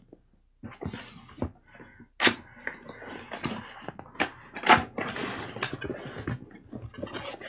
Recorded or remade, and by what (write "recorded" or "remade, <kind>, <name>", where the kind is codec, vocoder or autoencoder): recorded